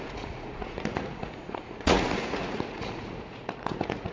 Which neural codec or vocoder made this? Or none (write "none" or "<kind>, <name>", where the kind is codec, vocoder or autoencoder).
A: vocoder, Vocos